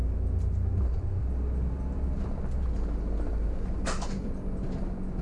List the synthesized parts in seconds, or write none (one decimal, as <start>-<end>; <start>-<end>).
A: none